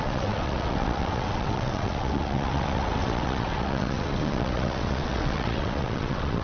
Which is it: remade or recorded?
remade